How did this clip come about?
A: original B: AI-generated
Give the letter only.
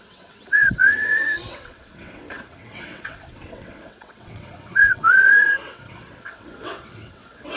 B